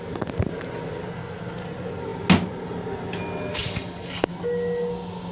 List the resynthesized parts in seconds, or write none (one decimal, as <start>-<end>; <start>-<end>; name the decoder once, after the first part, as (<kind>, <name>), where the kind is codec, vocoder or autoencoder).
3.5-4.3 (codec, DAC)